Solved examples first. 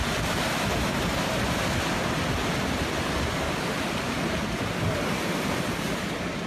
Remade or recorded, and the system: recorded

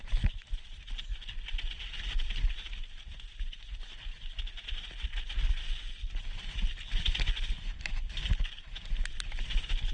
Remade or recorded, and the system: recorded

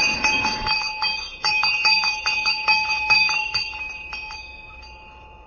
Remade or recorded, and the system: remade, autoencoder, DAC-VAE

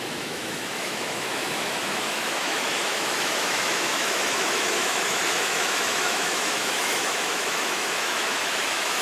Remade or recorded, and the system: remade, autoencoder, DAC-VAE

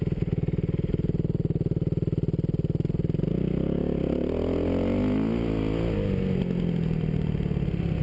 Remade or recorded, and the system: recorded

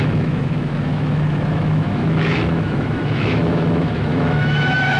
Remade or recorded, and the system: remade, autoencoder, DAC-VAE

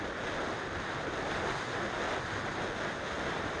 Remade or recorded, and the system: recorded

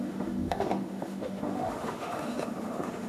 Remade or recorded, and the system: remade, autoencoder, DAC-VAE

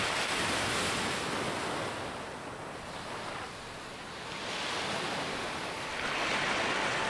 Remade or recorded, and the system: recorded